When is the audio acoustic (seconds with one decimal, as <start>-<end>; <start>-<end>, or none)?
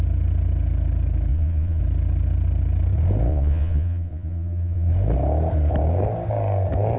0.0-1.3; 1.8-3.3; 4.9-7.0